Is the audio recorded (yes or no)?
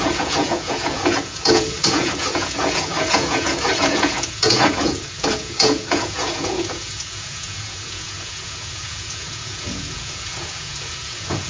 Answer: no